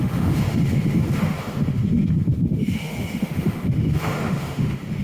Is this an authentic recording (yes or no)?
no